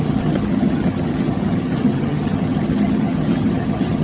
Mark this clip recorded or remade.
remade